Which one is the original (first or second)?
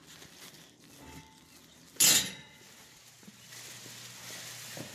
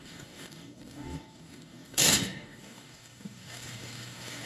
first